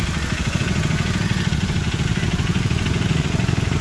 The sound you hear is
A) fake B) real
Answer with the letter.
A